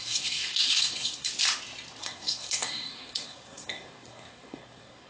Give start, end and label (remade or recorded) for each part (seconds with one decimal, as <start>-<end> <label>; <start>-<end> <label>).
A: 0.0-1.3 remade; 1.3-2.0 recorded; 2.0-5.1 remade